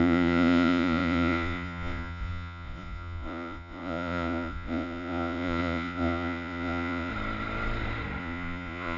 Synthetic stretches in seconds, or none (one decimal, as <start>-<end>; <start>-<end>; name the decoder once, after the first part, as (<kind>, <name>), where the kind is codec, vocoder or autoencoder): 0.0-7.1 (vocoder, Vocos); 8.2-9.0